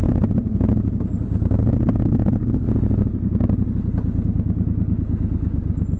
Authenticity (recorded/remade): recorded